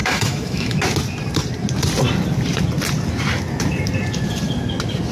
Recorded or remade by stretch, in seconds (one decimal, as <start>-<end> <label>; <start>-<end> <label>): 0.0-0.8 remade; 0.8-5.1 recorded